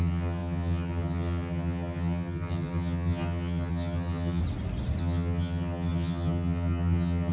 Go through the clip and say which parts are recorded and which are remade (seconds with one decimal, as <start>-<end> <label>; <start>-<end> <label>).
0.0-4.4 remade; 4.4-5.0 recorded; 5.0-7.3 remade